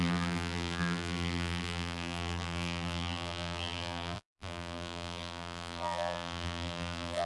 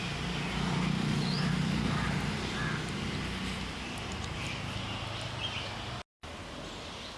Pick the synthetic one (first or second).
first